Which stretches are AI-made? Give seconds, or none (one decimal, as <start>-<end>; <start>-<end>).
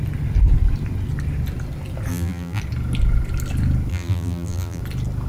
2.1-2.6; 3.9-4.8